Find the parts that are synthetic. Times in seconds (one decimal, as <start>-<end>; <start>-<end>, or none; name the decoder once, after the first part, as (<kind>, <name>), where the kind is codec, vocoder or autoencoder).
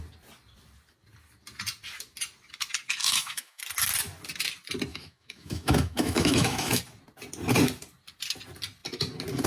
3.0-3.6 (autoencoder, DAC-VAE); 4.9-6.8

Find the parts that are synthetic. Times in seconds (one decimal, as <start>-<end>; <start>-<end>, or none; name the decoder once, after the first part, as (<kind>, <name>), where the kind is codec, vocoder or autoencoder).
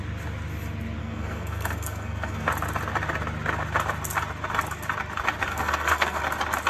1.0-2.5 (codec, SNAC); 5.5-6.2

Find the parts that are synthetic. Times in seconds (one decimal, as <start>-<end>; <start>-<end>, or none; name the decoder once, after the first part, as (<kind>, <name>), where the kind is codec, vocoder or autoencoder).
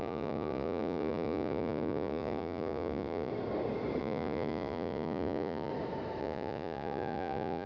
0.0-3.3 (vocoder, Vocos); 4.0-5.7; 6.2-7.7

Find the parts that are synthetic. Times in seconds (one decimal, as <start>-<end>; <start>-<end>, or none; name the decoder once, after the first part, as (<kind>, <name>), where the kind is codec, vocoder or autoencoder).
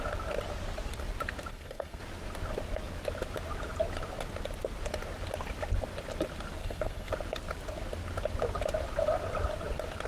1.5-2.0 (codec, SNAC); 6.6-7.1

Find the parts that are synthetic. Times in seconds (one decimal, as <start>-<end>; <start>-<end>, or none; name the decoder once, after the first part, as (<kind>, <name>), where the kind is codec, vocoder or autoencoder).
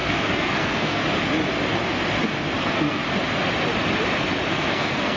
0.0-1.0 (codec, SNAC); 2.6-3.0; 4.5-5.2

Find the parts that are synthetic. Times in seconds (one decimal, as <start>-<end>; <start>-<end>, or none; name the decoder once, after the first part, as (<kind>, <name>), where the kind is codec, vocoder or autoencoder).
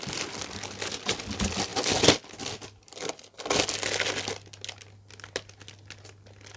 none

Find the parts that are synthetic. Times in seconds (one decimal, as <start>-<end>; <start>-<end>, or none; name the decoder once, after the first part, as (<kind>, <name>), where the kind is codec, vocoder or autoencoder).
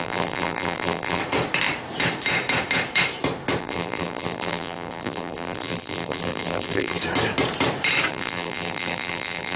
0.0-1.2 (vocoder, BigVGAN v2); 3.6-7.0; 8.1-9.6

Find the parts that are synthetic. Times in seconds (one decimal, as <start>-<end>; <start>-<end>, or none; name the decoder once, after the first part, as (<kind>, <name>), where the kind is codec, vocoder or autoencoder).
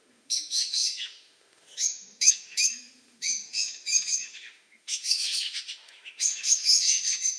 0.0-7.4 (autoencoder, DAC-VAE)